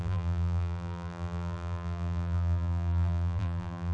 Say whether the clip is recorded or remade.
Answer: remade